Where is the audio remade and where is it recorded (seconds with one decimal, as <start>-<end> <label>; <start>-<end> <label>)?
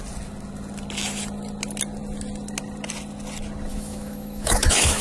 0.0-3.7 recorded; 3.7-5.0 remade